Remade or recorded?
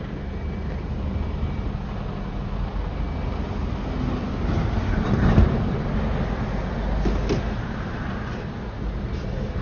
recorded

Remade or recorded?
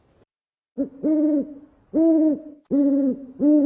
recorded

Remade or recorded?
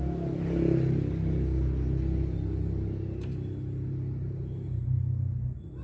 recorded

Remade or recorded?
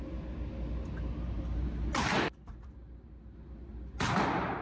recorded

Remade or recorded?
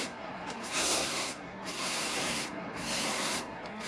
remade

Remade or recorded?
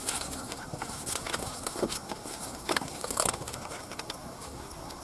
remade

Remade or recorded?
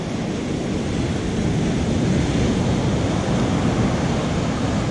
recorded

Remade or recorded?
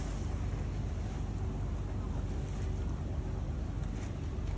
recorded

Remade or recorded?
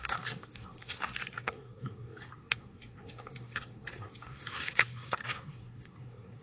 remade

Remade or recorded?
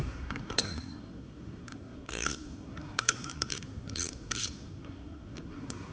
remade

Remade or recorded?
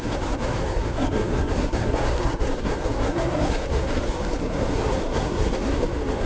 remade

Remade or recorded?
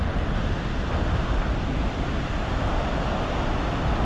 recorded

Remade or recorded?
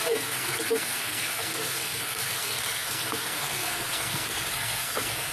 remade